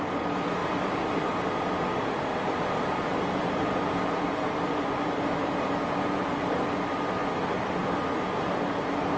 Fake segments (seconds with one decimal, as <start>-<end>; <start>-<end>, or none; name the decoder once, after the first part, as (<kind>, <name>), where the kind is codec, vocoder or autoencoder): 0.6-1.2 (vocoder, BigVGAN v2); 2.3-6.7